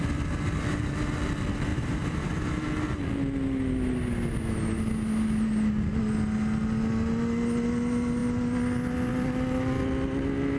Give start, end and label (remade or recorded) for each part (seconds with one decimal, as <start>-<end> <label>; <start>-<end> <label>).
0.0-1.7 recorded; 1.7-2.6 remade; 2.6-10.6 recorded